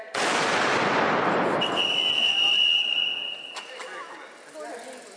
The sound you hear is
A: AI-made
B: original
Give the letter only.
B